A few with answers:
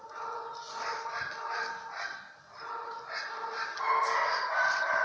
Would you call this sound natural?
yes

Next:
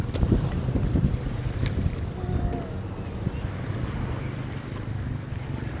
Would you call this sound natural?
yes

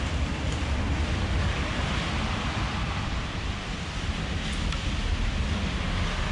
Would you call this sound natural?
yes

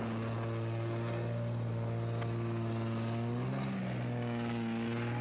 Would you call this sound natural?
yes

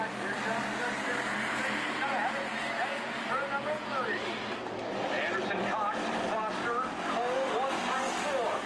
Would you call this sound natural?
yes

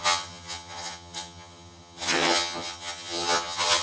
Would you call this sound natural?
no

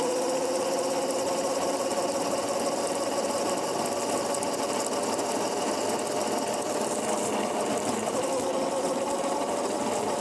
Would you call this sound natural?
yes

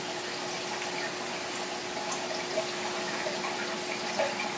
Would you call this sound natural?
yes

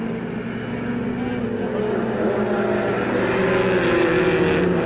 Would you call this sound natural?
yes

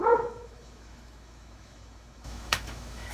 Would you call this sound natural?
no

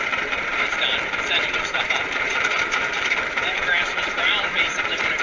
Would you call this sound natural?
no